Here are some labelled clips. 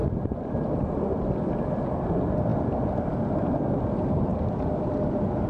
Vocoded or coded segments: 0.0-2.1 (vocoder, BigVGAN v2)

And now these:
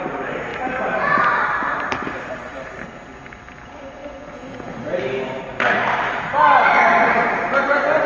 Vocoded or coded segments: 0.5-2.8 (vocoder, BigVGAN v2)

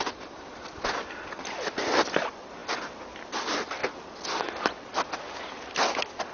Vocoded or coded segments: 0.0-3.8 (vocoder, BigVGAN v2)

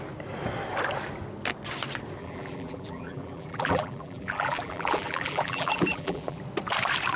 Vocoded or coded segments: 2.2-6.4 (vocoder, BigVGAN v2)

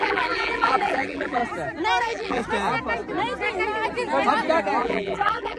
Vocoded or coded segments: 0.0-1.4 (vocoder, BigVGAN v2); 2.0-2.4; 4.8-5.6

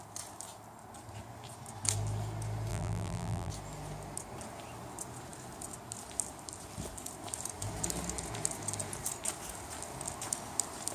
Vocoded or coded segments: 2.7-3.5 (vocoder, BigVGAN v2)